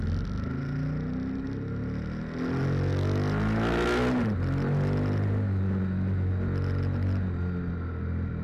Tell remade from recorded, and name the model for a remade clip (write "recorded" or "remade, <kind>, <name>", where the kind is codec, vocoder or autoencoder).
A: recorded